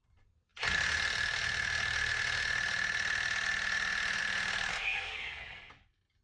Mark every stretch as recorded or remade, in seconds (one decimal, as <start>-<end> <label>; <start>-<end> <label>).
0.0-4.7 recorded; 4.7-5.7 remade; 5.7-6.2 recorded